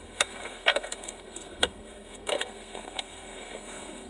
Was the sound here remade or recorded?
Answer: remade